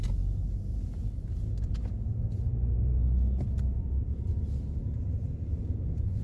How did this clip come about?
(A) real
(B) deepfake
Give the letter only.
A